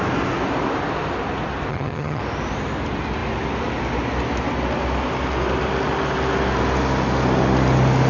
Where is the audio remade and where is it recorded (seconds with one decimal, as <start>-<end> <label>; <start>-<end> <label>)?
0.0-1.7 recorded; 1.7-2.2 remade; 2.2-8.1 recorded